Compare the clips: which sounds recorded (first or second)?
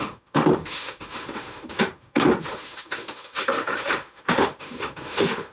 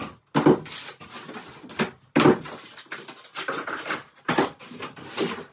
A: second